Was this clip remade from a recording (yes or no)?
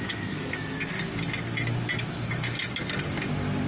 no